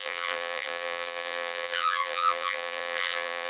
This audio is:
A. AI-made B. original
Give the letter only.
A